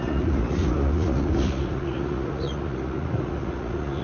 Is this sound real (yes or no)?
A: no